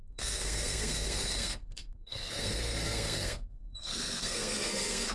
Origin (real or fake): fake